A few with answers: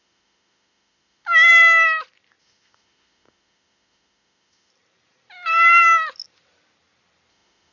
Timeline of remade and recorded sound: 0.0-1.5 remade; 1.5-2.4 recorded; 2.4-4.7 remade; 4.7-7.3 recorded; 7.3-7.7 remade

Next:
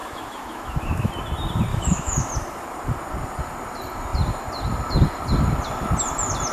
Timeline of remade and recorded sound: 0.0-1.1 remade; 1.1-1.7 recorded; 1.7-2.3 remade; 2.3-6.5 recorded